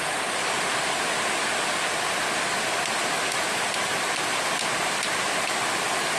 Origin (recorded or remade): recorded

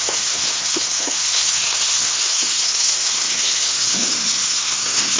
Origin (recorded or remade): remade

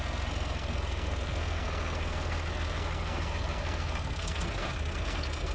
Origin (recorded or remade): remade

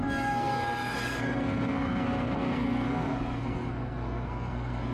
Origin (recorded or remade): remade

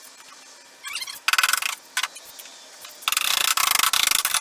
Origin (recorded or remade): recorded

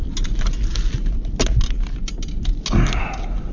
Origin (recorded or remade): recorded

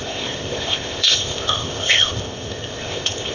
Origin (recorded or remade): remade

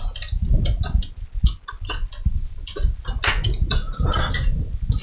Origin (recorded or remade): recorded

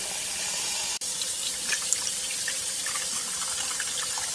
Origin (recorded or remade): recorded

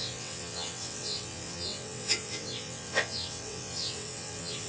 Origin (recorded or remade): remade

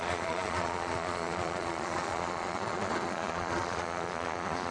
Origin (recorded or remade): remade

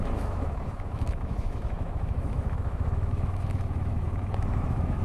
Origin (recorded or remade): remade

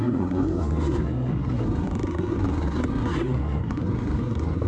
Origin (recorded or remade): remade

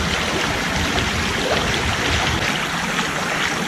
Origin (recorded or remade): recorded